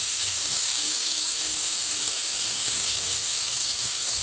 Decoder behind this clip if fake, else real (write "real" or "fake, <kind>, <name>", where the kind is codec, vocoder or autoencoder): fake, codec, DAC